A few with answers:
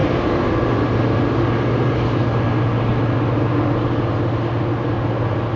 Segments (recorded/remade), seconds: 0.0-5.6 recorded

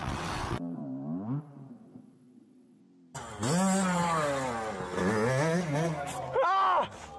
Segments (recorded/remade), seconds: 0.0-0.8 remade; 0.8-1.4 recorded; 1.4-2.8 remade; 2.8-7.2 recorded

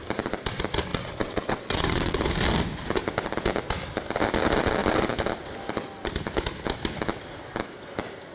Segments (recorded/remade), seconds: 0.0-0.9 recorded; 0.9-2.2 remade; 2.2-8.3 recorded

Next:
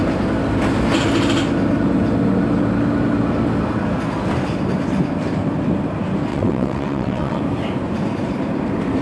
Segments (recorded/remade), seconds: 0.0-6.3 recorded; 6.3-7.4 remade; 7.4-9.0 recorded

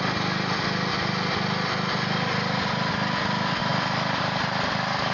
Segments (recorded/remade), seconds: 0.0-5.1 recorded